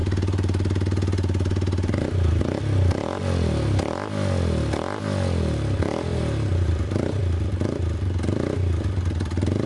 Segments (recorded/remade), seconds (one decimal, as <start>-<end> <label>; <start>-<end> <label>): 0.0-2.4 remade; 2.4-6.1 recorded; 6.1-7.2 remade; 7.2-9.7 recorded